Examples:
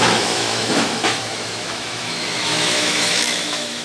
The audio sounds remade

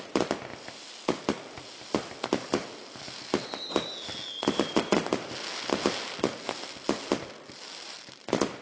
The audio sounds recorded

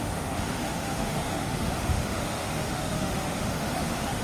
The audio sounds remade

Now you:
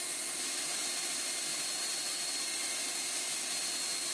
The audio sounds recorded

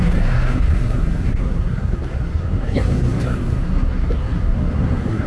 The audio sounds remade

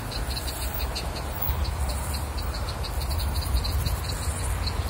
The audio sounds recorded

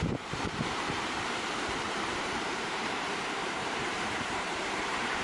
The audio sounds remade